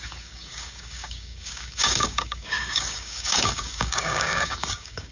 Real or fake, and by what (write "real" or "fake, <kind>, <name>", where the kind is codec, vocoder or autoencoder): fake, codec, DAC